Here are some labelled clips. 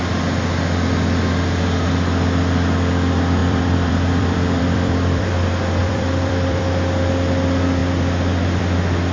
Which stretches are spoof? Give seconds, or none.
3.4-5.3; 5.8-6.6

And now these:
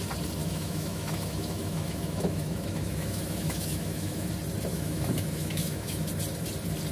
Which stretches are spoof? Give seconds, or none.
0.4-4.3; 4.7-6.1

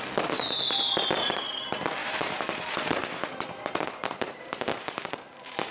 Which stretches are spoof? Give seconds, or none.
2.0-5.7

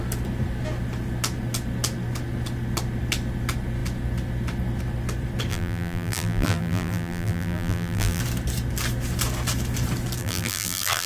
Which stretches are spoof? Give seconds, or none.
5.5-8.2; 10.2-11.1

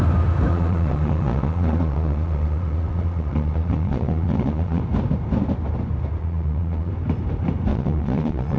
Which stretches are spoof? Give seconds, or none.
0.5-4.8; 6.2-6.9; 7.7-8.6